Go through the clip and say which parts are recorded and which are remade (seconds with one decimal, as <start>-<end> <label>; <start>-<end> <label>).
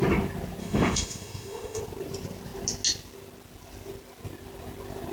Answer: 0.0-0.6 recorded; 0.6-1.8 remade; 1.8-5.1 recorded